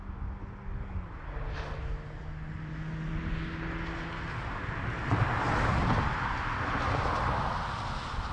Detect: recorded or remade recorded